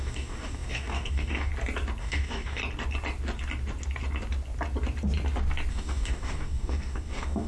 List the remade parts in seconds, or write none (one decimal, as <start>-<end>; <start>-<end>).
0.0-1.5; 2.0-2.6; 5.7-7.5

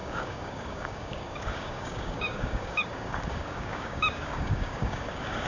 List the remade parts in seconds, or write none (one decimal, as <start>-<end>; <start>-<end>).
0.0-5.5

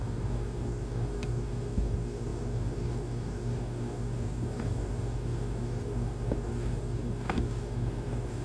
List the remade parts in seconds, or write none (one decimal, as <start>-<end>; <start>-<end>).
0.0-8.4

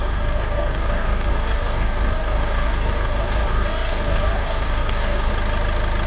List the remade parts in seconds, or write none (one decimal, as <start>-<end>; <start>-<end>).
0.0-5.3

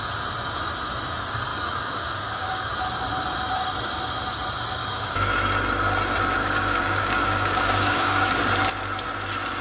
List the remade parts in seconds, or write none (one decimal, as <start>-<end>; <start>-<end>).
1.5-2.7; 4.8-5.3; 6.4-8.3

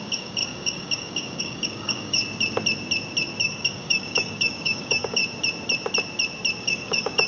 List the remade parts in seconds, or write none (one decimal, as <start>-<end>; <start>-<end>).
0.0-2.2; 3.4-5.2; 6.6-7.3